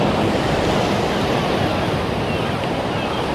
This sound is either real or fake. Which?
real